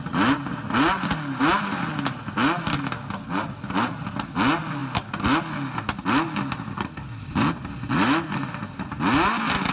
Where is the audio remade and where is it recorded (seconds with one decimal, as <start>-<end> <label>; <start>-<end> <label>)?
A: 0.0-9.7 recorded